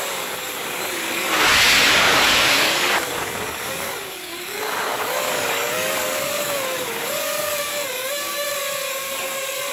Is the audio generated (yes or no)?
yes